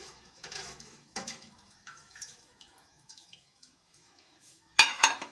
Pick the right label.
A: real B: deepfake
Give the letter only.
B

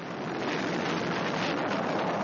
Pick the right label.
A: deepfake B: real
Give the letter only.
B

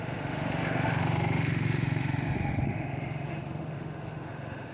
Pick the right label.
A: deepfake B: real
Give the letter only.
A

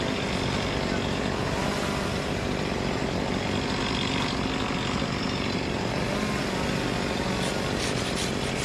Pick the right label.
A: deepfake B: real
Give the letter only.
B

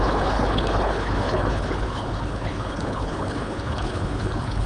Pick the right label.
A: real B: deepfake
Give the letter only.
B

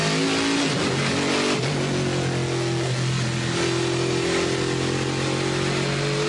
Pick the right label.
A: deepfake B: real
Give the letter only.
B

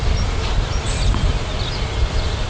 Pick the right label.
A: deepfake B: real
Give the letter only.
B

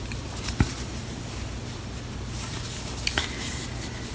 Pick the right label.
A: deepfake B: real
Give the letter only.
B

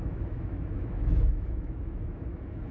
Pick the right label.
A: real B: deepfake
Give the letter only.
B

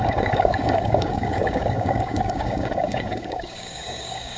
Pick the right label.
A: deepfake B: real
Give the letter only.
A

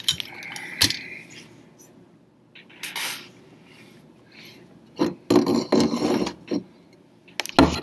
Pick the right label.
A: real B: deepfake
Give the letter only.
A